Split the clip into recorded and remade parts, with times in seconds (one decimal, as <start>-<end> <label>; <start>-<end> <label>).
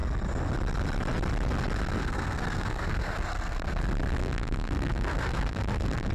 0.0-2.0 recorded; 2.0-3.8 remade; 3.8-4.2 recorded; 4.2-6.1 remade